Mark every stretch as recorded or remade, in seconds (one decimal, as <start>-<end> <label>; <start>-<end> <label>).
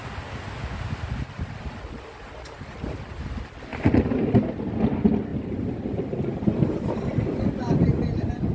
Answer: 0.0-8.5 recorded